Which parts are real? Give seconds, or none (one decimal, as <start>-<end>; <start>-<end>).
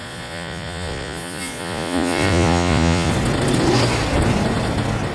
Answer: 3.1-5.1